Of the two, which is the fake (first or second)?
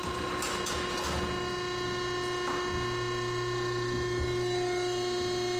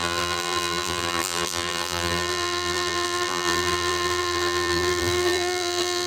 second